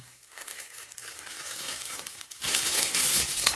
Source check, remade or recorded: remade